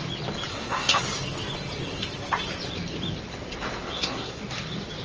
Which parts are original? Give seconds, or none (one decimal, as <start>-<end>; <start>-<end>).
0.0-0.5; 1.0-3.8; 4.4-5.0